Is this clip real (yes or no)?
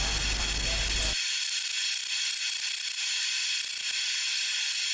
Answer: yes